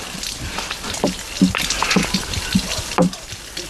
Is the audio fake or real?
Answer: real